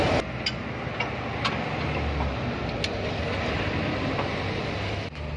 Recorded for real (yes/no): yes